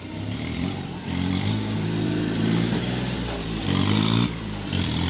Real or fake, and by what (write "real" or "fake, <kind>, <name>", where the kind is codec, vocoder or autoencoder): fake, vocoder, BigVGAN v2